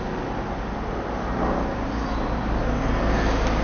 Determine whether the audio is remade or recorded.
recorded